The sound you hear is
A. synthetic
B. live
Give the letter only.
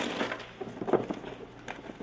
B